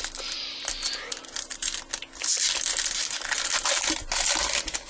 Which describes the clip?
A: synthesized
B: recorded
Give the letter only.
B